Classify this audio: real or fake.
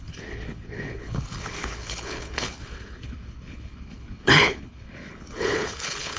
fake